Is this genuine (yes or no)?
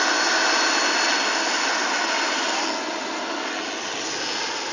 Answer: yes